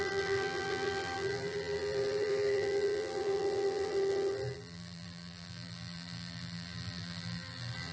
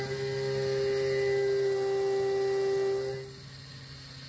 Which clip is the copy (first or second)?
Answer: first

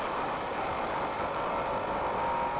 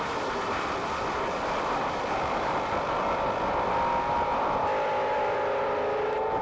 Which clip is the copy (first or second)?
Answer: second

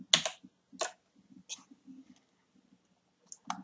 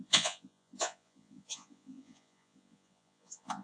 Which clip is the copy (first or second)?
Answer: second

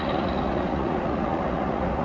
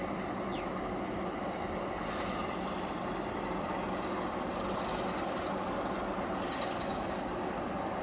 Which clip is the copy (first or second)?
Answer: first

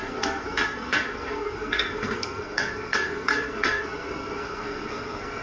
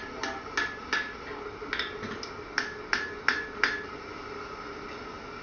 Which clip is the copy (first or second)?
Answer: first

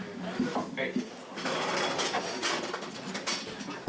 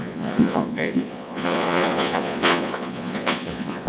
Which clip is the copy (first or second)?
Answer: second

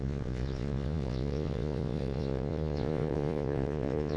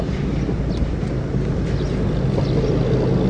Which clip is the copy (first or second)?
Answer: first